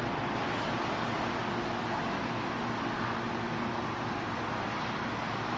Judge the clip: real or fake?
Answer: real